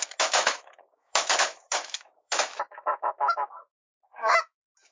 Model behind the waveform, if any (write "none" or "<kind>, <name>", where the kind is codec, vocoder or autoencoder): autoencoder, DAC-VAE